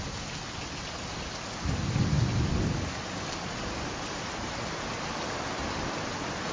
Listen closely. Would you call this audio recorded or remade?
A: recorded